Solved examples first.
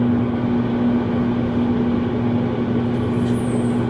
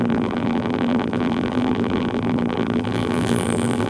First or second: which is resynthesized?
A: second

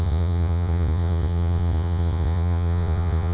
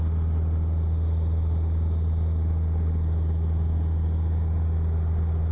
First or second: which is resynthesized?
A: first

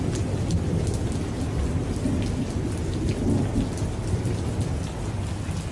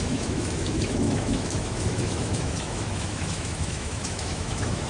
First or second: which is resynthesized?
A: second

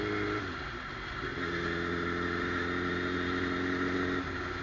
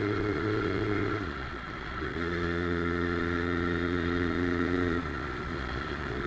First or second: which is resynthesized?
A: second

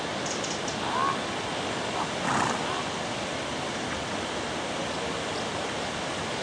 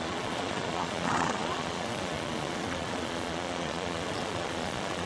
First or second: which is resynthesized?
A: second